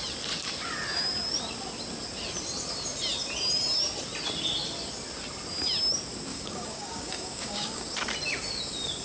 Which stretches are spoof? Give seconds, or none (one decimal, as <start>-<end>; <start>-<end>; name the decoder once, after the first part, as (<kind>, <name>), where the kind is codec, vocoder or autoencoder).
6.3-7.8 (codec, DAC)